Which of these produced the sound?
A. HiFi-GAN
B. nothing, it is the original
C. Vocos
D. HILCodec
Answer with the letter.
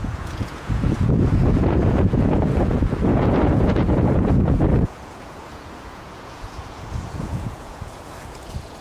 C